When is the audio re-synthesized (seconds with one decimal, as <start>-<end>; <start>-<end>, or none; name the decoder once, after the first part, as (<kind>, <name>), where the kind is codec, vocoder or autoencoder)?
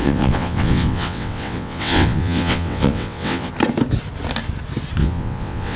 0.0-3.5 (vocoder, WaveNeXt); 5.0-5.8